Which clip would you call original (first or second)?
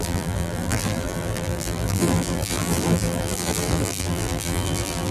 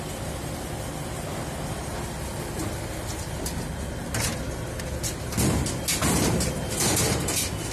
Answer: second